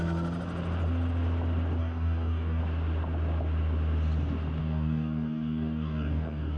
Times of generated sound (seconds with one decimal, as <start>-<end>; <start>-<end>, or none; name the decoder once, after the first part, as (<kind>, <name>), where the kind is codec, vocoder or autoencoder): 1.8-2.6 (codec, DAC); 4.6-6.6